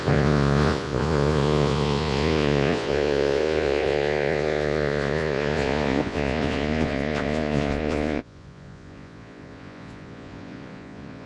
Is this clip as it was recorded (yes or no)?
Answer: no